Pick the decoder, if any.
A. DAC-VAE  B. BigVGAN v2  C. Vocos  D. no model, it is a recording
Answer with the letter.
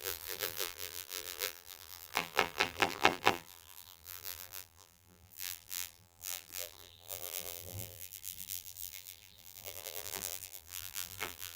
B